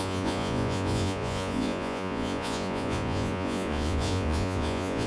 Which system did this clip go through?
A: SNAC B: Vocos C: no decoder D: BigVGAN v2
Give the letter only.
B